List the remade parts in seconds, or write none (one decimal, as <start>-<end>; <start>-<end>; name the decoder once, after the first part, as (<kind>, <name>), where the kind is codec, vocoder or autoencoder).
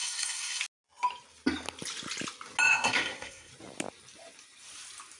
0.0-0.6 (codec, SNAC); 2.7-3.5